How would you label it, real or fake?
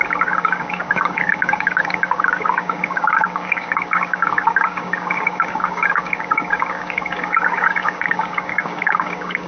fake